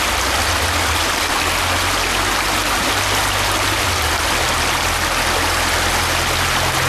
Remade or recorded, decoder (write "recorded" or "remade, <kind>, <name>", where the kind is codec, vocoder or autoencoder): recorded